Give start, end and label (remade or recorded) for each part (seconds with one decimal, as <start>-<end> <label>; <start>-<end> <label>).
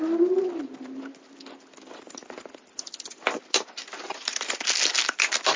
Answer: 0.0-5.6 recorded